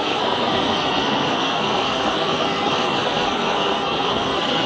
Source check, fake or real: fake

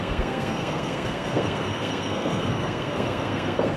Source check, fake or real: fake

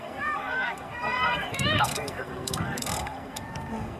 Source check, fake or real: fake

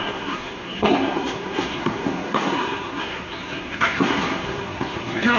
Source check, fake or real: fake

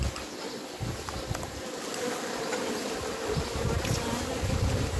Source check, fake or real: real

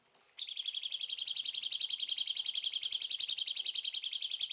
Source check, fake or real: real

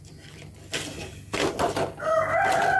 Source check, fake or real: real